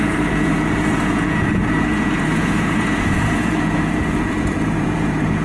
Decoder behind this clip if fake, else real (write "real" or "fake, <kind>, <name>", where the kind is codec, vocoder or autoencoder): fake, vocoder, Vocos